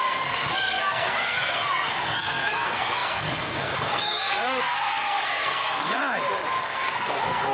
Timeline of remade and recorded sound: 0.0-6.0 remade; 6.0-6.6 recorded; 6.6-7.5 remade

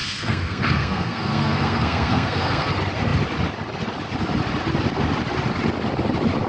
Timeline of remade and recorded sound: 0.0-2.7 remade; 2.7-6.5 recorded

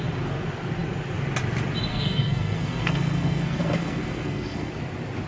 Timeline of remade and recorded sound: 0.0-1.9 recorded; 1.9-4.7 remade; 4.7-5.3 recorded